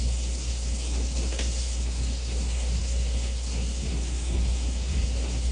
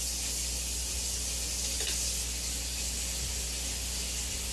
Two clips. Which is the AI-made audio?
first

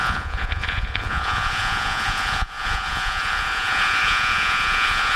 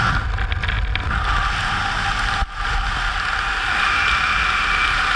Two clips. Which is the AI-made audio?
first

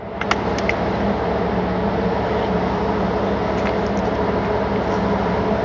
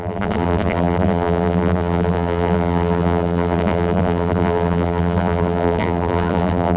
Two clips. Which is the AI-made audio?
second